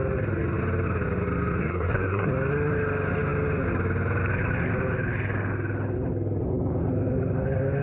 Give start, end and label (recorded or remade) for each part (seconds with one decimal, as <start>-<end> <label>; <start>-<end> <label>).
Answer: 0.0-1.6 recorded; 1.6-2.3 remade; 2.3-7.8 recorded